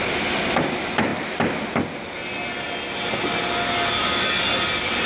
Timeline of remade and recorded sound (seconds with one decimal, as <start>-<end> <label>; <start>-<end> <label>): 0.0-5.1 recorded